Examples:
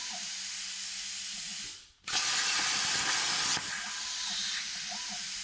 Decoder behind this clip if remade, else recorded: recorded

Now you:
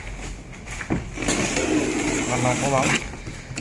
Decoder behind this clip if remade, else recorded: recorded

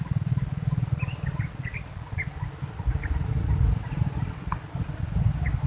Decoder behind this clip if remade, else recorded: recorded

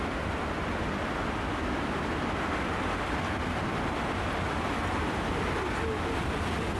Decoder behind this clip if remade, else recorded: recorded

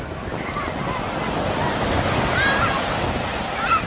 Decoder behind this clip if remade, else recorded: recorded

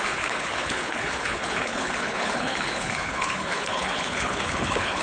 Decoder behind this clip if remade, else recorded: remade, codec, HILCodec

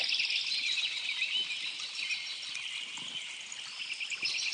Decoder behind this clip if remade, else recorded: recorded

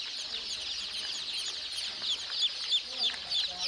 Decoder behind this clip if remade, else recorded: recorded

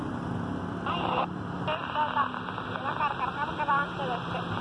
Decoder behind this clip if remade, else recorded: recorded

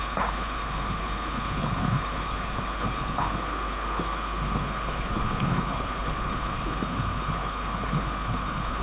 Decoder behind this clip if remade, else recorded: remade, codec, HILCodec